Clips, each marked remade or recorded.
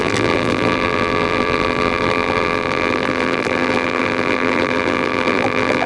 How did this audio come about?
remade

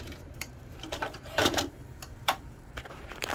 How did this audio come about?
remade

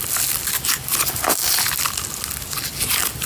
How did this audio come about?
recorded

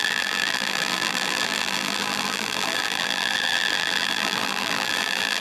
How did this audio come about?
remade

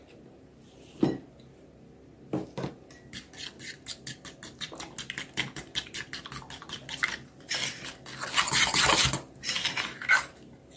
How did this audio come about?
recorded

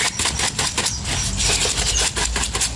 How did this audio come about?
recorded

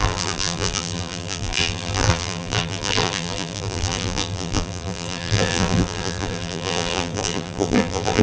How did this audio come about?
remade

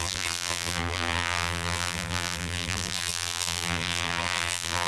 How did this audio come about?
remade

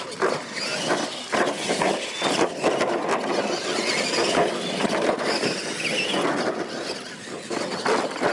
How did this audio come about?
recorded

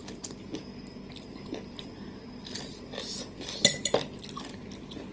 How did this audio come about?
recorded